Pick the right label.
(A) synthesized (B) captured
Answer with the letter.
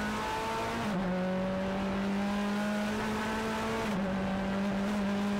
B